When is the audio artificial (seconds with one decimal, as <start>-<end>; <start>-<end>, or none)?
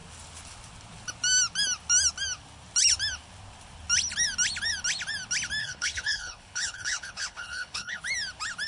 5.6-8.0